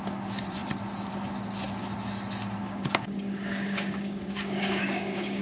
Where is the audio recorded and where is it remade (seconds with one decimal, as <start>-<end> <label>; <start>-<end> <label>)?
0.0-2.6 recorded; 2.6-5.4 remade